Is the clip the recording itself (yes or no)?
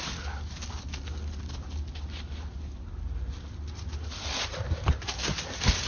yes